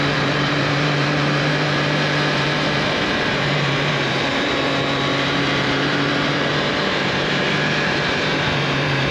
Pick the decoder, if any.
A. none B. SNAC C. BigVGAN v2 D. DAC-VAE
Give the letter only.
C